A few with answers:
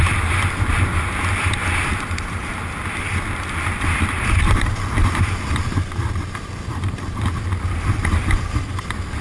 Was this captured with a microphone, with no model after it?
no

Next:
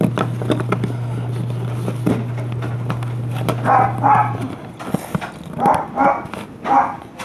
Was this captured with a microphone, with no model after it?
yes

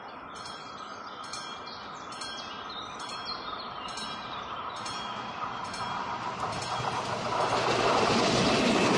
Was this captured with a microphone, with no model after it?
yes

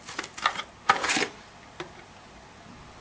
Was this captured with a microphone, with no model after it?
yes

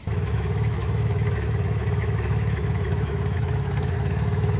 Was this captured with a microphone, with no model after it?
no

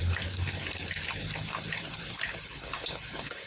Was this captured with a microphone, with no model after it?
yes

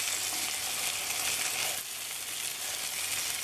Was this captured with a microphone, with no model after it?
yes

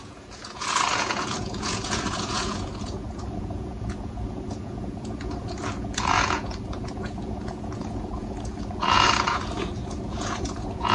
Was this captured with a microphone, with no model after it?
no